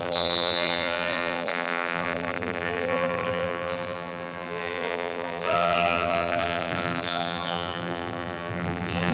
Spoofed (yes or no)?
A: yes